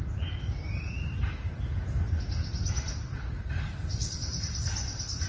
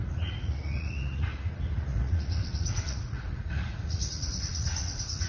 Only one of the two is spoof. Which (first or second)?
second